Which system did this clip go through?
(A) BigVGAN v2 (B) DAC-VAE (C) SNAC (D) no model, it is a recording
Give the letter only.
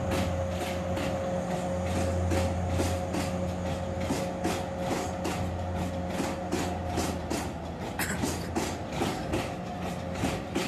D